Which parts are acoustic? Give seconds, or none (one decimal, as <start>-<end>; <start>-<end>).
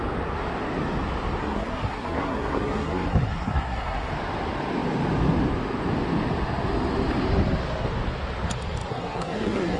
0.0-1.4; 4.1-8.9